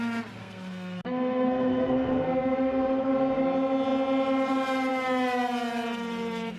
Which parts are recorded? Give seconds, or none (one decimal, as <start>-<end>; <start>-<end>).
0.0-0.4; 3.1-6.6